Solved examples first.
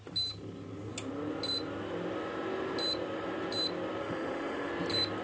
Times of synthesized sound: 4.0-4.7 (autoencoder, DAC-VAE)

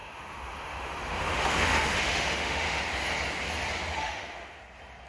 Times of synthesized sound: 0.0-2.8 (autoencoder, DAC-VAE); 4.0-4.6